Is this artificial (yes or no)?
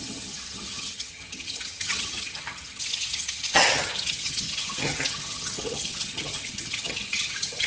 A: yes